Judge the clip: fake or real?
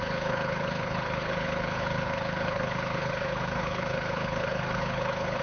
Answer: fake